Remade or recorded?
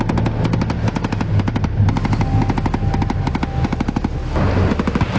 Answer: recorded